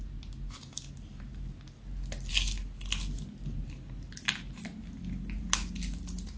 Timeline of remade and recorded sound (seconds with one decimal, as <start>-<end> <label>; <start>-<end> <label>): 0.0-6.4 recorded

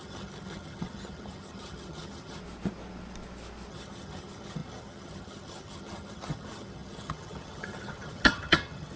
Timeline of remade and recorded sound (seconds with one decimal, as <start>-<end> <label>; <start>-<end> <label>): 0.0-2.4 remade; 2.4-3.7 recorded; 3.7-9.0 remade

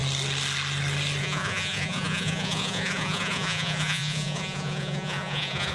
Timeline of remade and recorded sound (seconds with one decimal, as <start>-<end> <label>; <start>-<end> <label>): 0.0-1.2 recorded; 1.2-5.7 remade